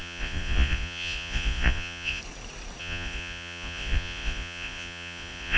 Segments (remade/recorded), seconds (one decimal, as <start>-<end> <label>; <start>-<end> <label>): 0.0-2.2 remade; 2.2-2.8 recorded; 2.8-5.6 remade